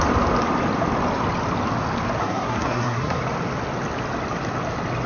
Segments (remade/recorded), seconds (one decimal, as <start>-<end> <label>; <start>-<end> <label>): 0.0-2.2 recorded; 2.2-3.2 remade; 3.2-5.1 recorded